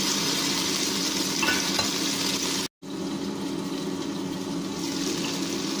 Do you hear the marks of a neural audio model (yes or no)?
no